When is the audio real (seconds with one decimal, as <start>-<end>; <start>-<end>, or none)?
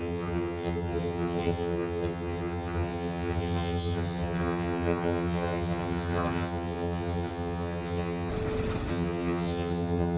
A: 8.3-8.9